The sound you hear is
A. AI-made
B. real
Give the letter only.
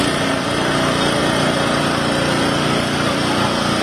B